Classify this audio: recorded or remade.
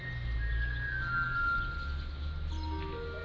recorded